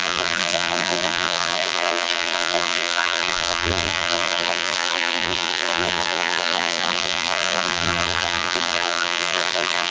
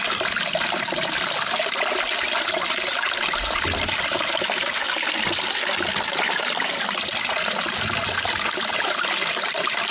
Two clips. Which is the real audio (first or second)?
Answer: second